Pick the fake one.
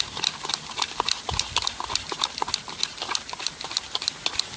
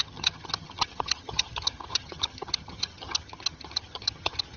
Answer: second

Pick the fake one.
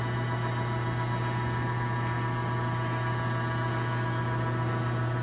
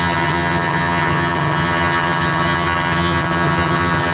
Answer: second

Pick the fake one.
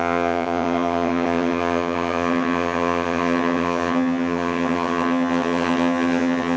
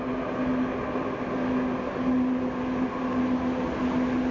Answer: first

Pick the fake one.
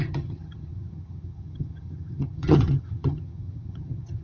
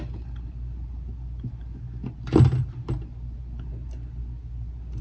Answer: first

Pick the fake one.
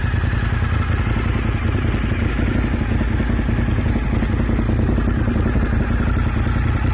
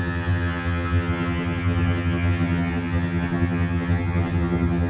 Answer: second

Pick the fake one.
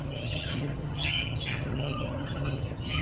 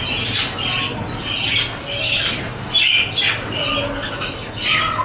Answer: first